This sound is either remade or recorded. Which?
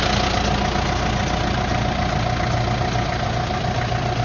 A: recorded